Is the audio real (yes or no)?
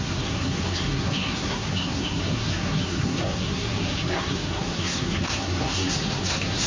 no